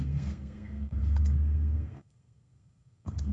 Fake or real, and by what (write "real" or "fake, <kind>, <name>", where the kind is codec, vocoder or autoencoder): fake, codec, SNAC